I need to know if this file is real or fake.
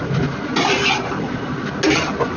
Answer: real